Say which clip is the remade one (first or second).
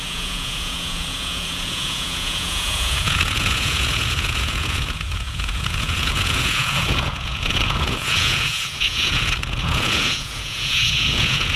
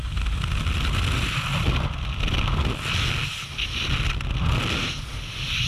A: first